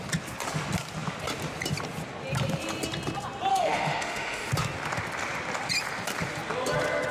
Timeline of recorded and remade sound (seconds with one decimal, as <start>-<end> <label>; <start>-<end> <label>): 0.0-3.5 recorded; 3.5-4.5 remade; 4.5-7.1 recorded